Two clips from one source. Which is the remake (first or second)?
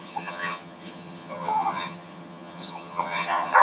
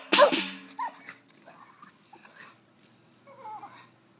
first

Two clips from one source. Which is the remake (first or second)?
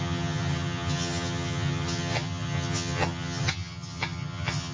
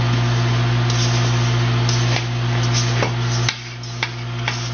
first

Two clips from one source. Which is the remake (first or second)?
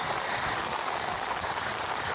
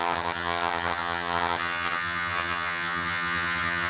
second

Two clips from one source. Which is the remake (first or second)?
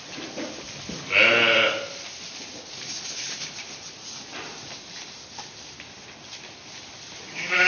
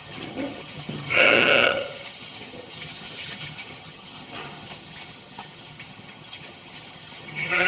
second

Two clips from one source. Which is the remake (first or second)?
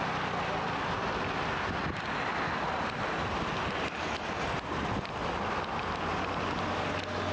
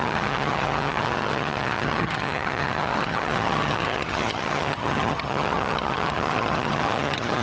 second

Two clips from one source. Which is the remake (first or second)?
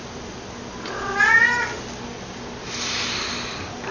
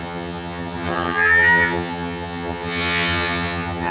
second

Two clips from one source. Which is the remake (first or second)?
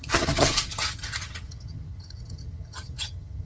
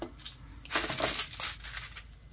first